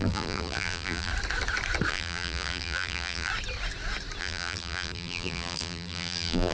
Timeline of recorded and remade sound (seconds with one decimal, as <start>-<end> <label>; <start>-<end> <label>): 0.0-1.1 remade; 1.1-1.9 recorded; 1.9-3.3 remade; 3.3-4.2 recorded; 4.2-6.5 remade